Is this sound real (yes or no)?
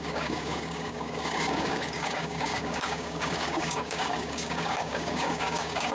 no